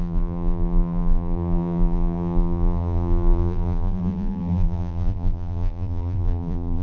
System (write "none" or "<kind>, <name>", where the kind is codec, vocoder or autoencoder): vocoder, BigVGAN v2